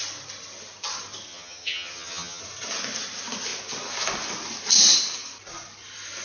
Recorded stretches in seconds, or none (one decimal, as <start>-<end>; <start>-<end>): 0.0-1.3; 2.4-6.2